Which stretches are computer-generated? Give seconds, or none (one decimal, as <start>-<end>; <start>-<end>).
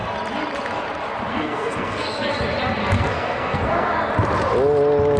1.3-2.3; 2.8-4.1